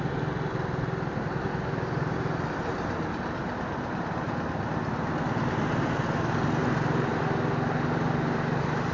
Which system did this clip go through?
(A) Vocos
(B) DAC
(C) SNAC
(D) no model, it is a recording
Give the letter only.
D